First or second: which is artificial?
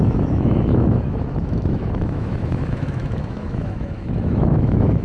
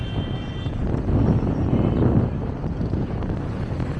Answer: first